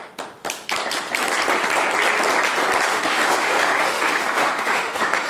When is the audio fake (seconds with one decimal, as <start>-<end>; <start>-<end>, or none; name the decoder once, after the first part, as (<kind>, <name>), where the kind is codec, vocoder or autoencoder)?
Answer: 2.9-5.3 (autoencoder, DAC-VAE)